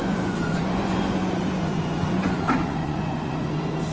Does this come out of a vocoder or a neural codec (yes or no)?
yes